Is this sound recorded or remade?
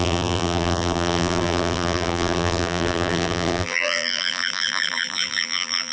remade